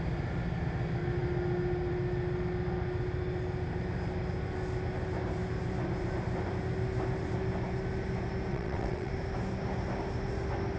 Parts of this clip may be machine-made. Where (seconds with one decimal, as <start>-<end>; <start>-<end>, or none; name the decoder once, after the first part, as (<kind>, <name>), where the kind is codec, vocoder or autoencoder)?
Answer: 8.5-9.1 (vocoder, WaveNeXt)